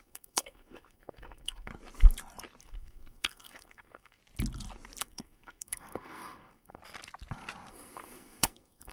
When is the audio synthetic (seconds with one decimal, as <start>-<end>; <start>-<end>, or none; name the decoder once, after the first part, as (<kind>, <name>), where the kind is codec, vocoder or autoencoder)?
0.0-1.7 (codec, SNAC); 2.6-4.2; 5.0-6.8; 7.7-8.9